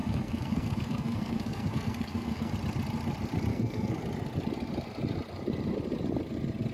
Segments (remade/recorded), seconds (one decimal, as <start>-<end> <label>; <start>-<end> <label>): 0.0-2.5 remade; 2.5-3.5 recorded; 3.5-4.0 remade; 4.0-6.7 recorded